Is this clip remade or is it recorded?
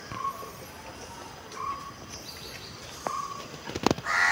recorded